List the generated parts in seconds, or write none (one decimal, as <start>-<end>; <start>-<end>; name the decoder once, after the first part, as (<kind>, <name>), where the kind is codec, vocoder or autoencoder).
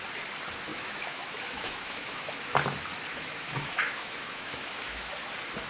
0.7-2.3 (autoencoder, DAC-VAE); 3.1-5.1